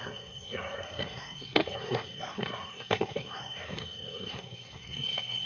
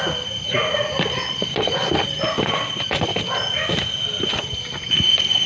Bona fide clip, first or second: second